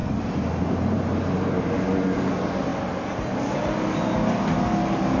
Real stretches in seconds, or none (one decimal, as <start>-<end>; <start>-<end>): 2.3-5.2